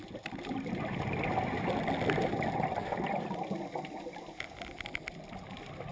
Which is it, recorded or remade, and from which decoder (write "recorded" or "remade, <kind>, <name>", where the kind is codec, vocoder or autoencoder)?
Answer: recorded